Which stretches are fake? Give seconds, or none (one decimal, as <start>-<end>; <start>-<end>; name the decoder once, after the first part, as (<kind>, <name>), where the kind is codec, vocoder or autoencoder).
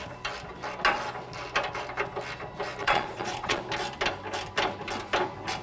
2.8-3.6 (vocoder, Vocos)